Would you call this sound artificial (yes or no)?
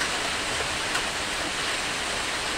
no